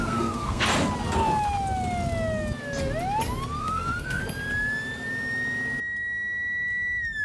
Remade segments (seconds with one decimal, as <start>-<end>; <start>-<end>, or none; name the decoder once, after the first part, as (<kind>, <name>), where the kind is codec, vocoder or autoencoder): 0.0-0.6 (codec, SNAC); 3.6-4.2